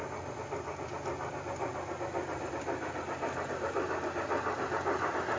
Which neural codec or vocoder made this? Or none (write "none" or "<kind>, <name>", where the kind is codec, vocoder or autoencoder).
none